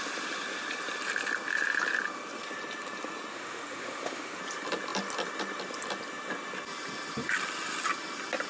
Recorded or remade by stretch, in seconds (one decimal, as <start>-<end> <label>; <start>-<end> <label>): 0.0-3.3 recorded; 3.3-4.4 remade; 4.4-8.5 recorded